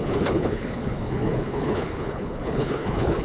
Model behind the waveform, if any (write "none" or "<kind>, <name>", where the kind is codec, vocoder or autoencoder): codec, HILCodec